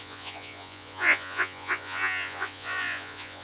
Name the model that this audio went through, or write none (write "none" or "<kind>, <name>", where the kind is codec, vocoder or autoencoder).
vocoder, Vocos